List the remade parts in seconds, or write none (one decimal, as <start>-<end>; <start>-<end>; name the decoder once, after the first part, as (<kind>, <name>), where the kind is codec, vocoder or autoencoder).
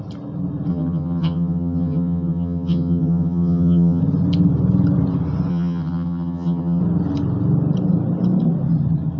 0.7-4.0 (vocoder, HiFi-GAN); 5.5-6.8